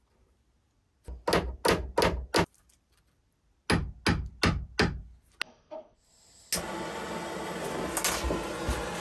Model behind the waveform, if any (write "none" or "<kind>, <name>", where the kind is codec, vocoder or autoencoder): none